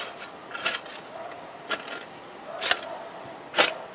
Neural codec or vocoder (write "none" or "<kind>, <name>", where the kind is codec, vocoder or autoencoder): none